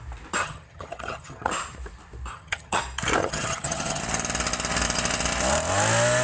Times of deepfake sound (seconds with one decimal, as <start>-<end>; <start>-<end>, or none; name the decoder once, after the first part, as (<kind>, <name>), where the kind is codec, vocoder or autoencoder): 0.4-1.5 (vocoder, HiFi-GAN); 2.3-2.8; 3.2-4.0